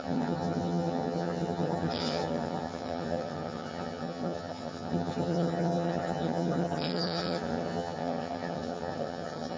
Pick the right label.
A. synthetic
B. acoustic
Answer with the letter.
A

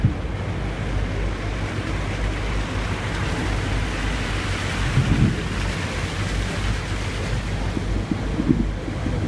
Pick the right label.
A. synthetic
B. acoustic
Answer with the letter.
B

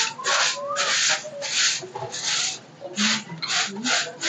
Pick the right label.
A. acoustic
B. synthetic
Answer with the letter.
A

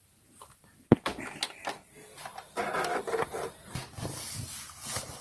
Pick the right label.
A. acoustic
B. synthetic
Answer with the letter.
B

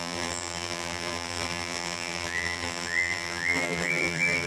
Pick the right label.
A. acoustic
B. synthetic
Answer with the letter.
B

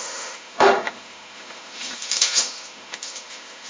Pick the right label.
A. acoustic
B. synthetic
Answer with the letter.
B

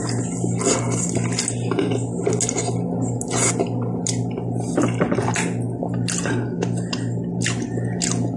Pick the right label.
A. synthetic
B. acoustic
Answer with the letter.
B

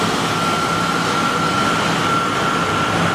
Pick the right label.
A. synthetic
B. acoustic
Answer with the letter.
B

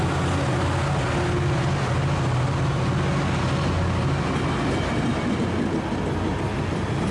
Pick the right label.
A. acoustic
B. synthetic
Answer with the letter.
A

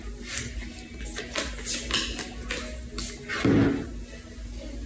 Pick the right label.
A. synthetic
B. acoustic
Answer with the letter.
B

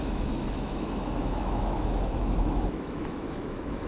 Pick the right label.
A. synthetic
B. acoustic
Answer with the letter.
A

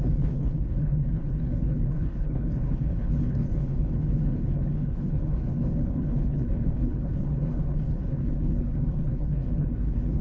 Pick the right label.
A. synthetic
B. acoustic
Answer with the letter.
A